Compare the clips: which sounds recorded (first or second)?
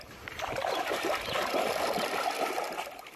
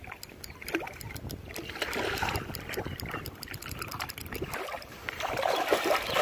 first